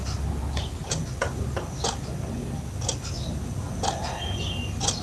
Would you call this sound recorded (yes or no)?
yes